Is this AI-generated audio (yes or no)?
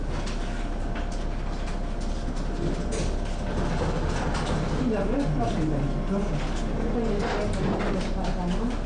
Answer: no